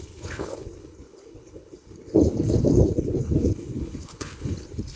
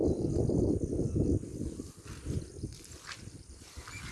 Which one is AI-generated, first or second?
first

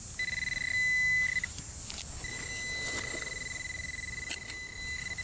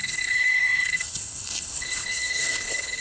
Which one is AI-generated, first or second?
second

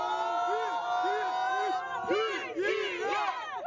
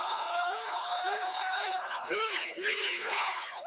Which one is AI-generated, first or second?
second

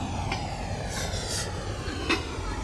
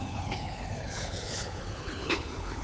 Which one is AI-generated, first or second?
second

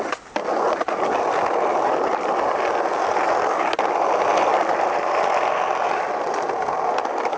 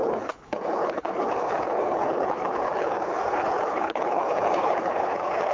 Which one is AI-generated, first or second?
second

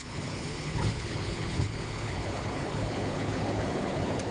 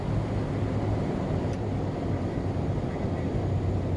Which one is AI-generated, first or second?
first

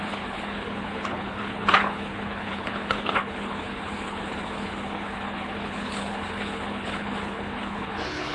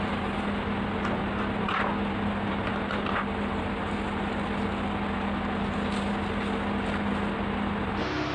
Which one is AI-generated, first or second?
first